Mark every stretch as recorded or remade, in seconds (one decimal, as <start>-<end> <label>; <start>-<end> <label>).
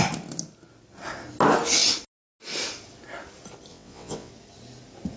0.0-3.7 recorded; 3.7-4.3 remade; 4.3-5.2 recorded